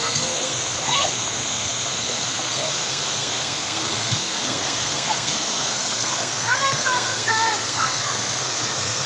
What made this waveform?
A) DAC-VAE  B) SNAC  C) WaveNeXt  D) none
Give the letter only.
B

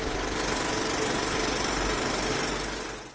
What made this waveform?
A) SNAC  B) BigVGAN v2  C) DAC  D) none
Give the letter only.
D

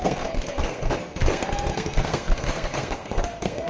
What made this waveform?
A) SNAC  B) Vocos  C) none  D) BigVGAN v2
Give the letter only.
A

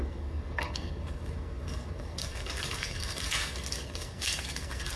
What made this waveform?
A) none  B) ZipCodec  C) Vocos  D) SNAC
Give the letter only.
D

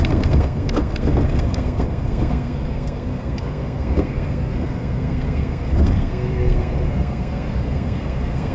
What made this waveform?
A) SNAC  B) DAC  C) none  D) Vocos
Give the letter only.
A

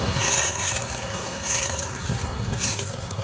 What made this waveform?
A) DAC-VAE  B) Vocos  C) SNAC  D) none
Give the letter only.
C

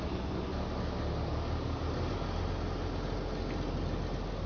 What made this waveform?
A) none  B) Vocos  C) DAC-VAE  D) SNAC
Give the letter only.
A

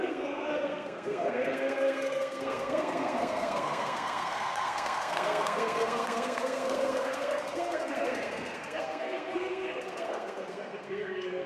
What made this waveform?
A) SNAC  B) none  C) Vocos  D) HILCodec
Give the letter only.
A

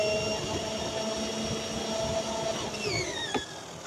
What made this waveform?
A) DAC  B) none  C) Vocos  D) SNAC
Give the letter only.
B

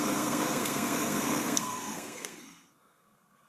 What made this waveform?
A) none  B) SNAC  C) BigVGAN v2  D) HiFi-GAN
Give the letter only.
B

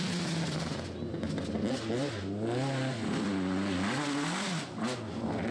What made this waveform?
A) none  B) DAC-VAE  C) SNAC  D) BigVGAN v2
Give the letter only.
A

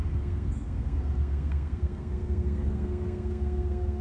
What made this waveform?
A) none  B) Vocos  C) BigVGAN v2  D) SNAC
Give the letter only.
D